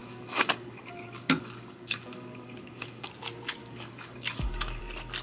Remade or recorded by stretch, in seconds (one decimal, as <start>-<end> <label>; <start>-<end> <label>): 0.0-3.1 remade; 3.1-3.6 recorded; 3.6-4.8 remade; 4.8-5.2 recorded